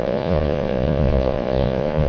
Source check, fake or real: fake